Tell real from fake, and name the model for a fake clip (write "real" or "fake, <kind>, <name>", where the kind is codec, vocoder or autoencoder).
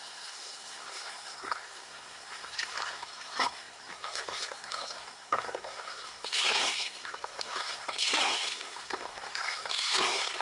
fake, codec, SNAC